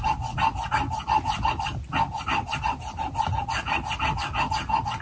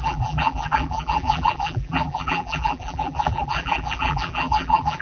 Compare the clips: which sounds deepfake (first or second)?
second